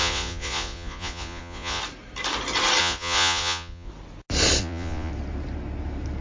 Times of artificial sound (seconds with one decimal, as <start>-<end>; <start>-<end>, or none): 0.0-1.8; 2.8-3.9; 4.6-5.1